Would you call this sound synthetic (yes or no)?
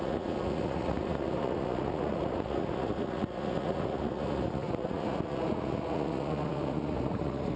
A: yes